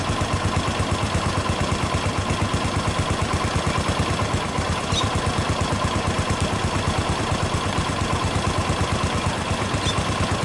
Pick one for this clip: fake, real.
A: real